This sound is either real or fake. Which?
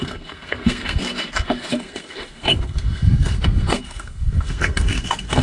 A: fake